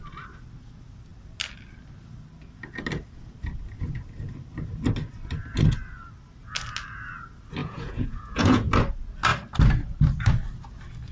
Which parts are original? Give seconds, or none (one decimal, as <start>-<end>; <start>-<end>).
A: 0.0-7.6; 8.7-11.1